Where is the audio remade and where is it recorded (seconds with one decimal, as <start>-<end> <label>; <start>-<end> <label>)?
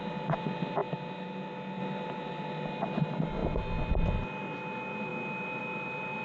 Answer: 0.0-6.2 recorded